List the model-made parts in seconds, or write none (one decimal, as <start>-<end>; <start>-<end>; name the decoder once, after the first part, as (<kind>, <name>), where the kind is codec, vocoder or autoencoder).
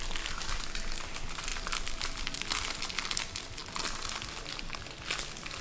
none